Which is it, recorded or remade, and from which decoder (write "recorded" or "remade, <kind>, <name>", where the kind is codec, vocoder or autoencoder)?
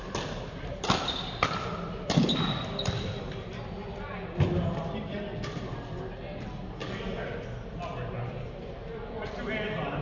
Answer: recorded